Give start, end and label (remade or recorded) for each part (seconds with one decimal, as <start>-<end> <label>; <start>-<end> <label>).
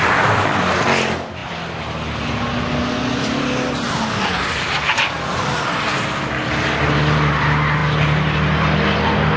0.0-9.4 recorded